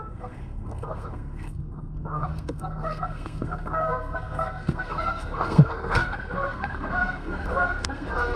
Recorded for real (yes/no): no